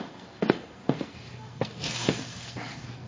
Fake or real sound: fake